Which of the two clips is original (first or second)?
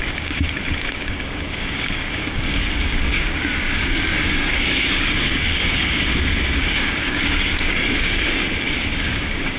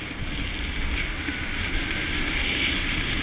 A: second